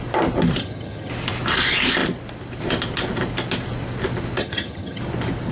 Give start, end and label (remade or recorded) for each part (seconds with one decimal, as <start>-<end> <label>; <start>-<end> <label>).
0.0-0.6 recorded; 0.6-1.1 remade; 1.1-4.4 recorded; 4.4-5.0 remade; 5.0-5.5 recorded